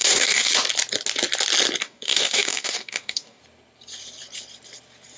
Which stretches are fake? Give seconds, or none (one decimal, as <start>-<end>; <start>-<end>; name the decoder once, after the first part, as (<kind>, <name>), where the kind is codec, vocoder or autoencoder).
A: 0.0-0.5 (codec, DAC); 1.8-3.4